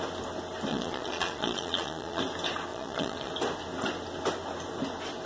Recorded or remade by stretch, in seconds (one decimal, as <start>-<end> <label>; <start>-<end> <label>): 0.0-0.7 recorded; 0.7-2.2 remade; 2.2-2.7 recorded; 2.7-3.3 remade; 3.3-5.3 recorded